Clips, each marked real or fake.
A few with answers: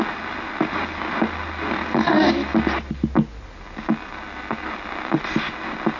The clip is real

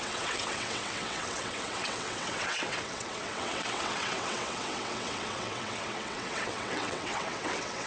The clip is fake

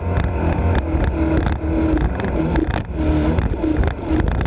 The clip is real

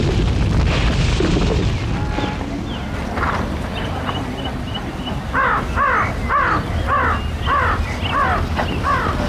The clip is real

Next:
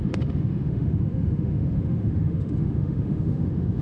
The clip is fake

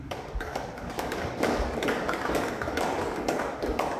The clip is fake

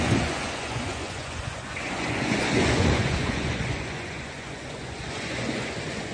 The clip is fake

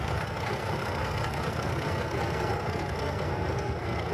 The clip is fake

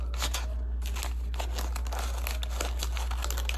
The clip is real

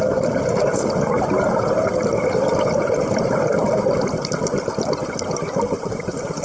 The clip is real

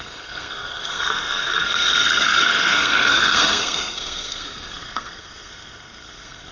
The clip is fake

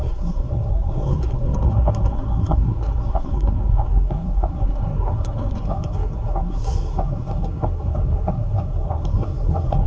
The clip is fake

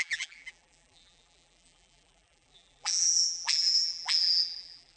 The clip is fake